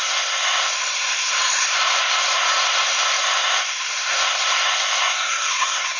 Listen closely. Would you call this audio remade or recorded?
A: remade